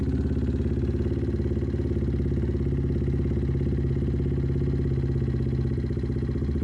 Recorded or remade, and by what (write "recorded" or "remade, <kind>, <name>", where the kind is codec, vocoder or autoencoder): recorded